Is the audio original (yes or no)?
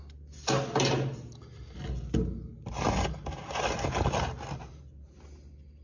yes